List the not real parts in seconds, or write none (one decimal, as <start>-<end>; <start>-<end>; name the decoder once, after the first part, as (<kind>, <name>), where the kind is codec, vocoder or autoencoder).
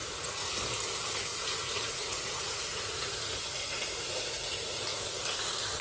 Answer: 0.0-0.5 (vocoder, Vocos); 1.3-4.8